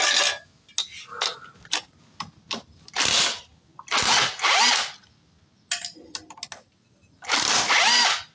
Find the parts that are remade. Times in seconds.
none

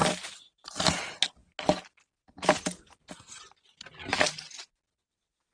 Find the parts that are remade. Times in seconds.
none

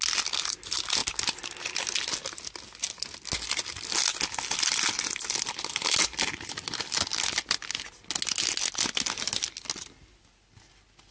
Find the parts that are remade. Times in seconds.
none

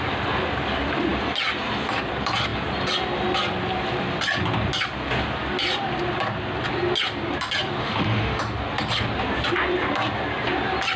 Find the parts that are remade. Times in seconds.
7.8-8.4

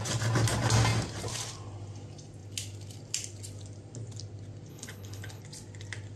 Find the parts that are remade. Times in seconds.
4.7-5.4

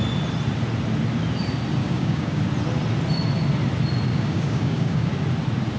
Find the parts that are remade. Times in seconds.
1.8-2.4; 4.1-5.1